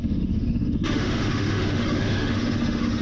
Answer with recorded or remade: remade